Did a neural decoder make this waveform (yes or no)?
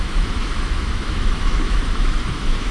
yes